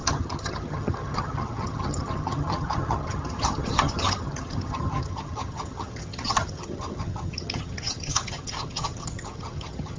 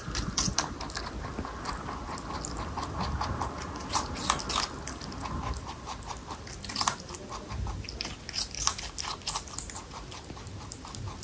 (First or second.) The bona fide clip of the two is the second